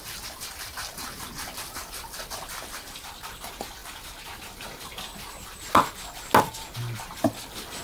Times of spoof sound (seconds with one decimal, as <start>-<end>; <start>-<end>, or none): none